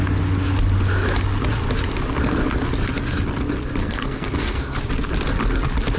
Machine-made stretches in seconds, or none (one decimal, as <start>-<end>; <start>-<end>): 3.8-4.8